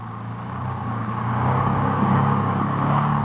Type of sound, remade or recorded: remade